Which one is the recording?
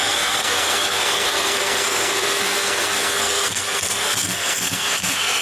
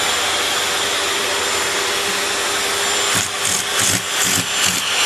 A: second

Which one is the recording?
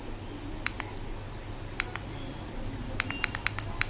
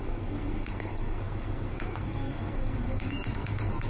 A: first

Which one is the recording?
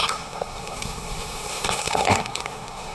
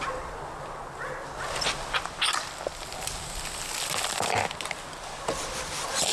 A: second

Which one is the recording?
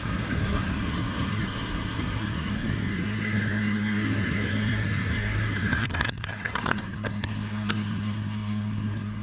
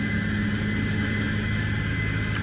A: second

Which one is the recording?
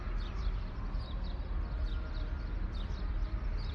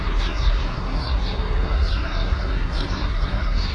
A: first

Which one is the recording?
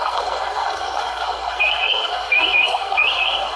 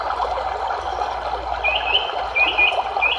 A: second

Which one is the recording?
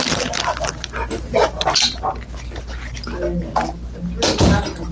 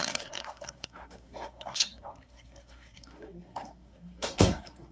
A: first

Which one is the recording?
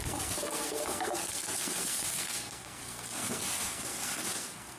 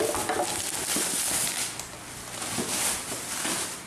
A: second